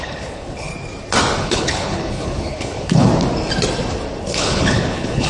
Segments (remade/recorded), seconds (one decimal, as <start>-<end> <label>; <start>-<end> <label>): 0.0-0.7 remade; 0.7-1.4 recorded; 1.4-3.1 remade; 3.1-4.2 recorded; 4.2-5.3 remade